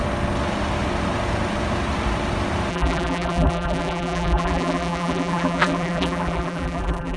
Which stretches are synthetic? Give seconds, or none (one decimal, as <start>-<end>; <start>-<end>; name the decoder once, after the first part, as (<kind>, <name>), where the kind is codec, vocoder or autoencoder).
2.7-7.2 (vocoder, BigVGAN v2)